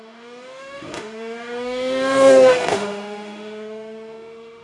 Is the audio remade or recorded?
remade